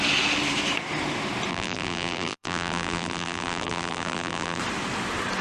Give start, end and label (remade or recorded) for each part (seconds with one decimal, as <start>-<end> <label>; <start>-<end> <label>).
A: 0.0-1.5 recorded; 1.5-4.6 remade; 4.6-5.4 recorded

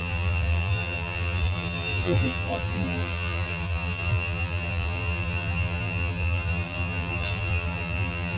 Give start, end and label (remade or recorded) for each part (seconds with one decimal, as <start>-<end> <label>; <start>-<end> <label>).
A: 0.0-8.4 remade

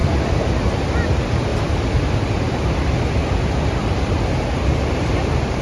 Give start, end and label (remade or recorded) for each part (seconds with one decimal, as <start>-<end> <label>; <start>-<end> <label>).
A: 0.0-1.5 remade; 1.5-4.9 recorded; 4.9-5.6 remade

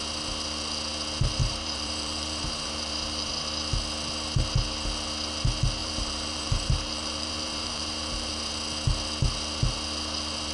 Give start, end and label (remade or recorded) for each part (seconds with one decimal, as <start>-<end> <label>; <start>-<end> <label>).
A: 0.0-1.4 recorded; 1.4-3.3 remade; 3.3-5.8 recorded; 5.8-8.5 remade; 8.5-10.5 recorded

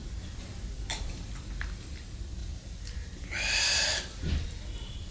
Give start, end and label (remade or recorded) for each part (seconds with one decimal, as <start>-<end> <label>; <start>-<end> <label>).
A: 0.0-1.2 remade; 1.2-5.1 recorded

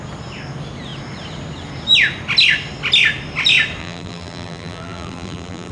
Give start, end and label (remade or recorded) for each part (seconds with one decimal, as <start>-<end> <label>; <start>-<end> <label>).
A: 0.0-3.8 recorded; 3.8-5.7 remade

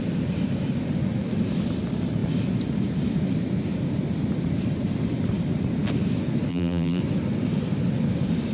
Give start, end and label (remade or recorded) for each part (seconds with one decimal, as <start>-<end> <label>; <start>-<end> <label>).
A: 0.0-6.5 recorded; 6.5-7.0 remade; 7.0-8.5 recorded

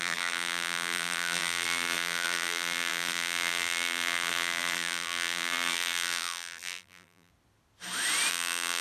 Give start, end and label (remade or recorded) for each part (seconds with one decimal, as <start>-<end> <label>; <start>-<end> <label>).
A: 0.0-7.3 remade; 7.3-8.3 recorded; 8.3-8.8 remade